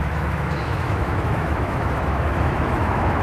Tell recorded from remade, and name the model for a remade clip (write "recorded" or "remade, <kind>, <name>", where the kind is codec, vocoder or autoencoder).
remade, autoencoder, DAC-VAE